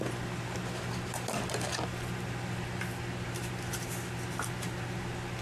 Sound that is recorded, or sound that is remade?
recorded